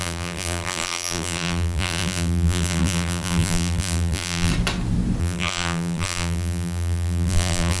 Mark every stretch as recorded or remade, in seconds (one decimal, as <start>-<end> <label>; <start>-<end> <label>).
0.0-4.5 remade; 4.5-5.2 recorded; 5.2-7.8 remade